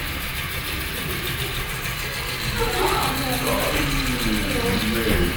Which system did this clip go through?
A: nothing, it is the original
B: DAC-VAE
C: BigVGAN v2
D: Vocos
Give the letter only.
A